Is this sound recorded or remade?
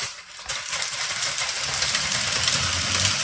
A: remade